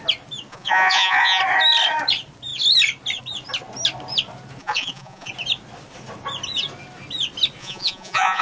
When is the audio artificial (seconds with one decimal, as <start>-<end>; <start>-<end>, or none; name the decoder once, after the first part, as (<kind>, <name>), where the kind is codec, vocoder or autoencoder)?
0.5-1.4 (vocoder, Vocos); 4.6-5.3; 7.6-8.4